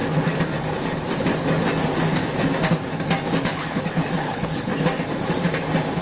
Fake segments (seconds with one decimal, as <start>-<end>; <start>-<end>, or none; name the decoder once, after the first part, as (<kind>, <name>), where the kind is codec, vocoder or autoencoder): 3.4-4.7 (codec, HILCodec)